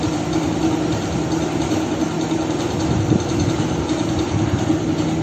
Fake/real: real